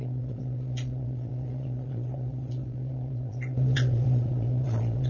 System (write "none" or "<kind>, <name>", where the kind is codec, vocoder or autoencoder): vocoder, Vocos